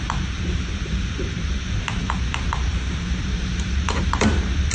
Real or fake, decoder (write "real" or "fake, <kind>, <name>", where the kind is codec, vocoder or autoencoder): fake, vocoder, BigVGAN v2